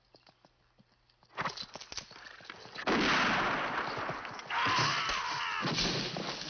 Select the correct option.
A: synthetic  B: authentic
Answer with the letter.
B